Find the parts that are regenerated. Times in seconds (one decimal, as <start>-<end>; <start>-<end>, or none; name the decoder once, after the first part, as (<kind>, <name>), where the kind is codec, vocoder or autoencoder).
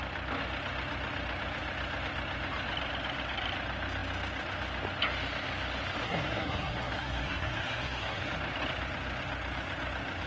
6.0-8.2 (codec, SNAC)